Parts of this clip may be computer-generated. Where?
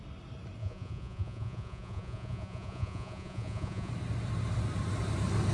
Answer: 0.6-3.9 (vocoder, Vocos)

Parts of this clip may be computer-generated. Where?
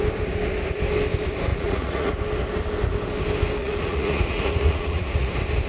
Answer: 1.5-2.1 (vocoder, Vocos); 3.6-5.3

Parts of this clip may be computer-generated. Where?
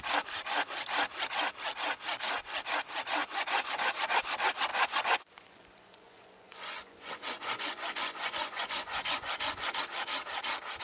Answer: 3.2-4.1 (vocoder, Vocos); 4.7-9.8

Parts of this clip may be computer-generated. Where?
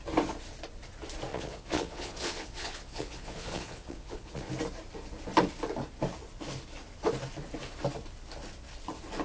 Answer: 1.3-4.5 (vocoder, Vocos)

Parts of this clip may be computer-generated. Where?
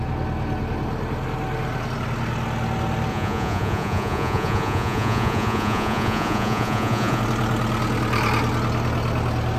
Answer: 3.1-7.2 (vocoder, Vocos)